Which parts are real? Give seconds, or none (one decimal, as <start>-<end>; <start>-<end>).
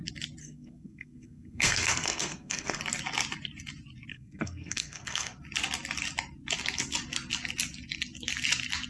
0.0-0.4; 2.8-4.1; 5.4-8.9